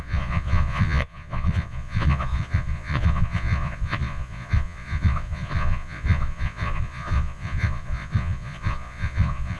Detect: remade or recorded remade